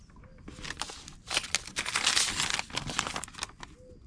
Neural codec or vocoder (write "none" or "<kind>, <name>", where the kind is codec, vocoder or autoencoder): none